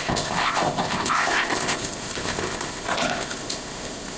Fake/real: fake